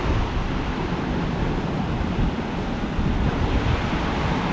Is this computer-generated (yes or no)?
no